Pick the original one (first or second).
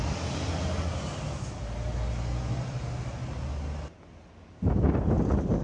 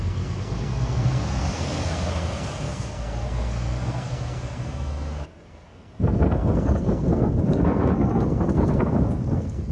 first